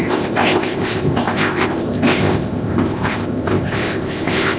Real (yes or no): no